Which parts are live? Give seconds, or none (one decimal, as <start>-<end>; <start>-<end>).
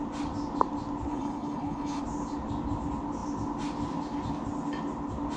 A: 0.0-1.1; 2.0-5.4